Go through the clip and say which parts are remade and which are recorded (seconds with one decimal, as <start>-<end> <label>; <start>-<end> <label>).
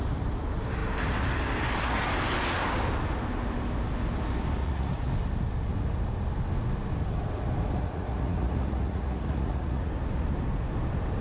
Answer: 0.0-4.6 recorded; 4.6-5.1 remade; 5.1-7.8 recorded; 7.8-9.9 remade; 9.9-11.2 recorded